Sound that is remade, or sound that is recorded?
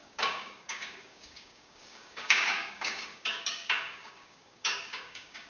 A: remade